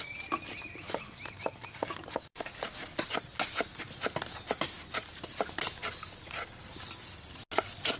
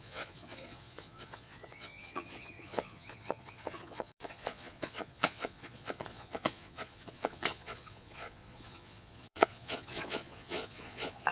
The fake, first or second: second